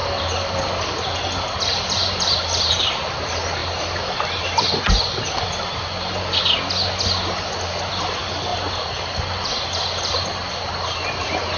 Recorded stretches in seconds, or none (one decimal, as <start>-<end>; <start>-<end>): 2.7-8.5